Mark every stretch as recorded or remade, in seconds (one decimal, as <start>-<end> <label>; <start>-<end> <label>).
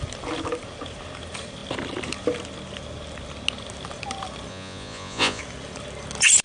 0.0-4.5 recorded; 4.5-5.4 remade; 5.4-6.4 recorded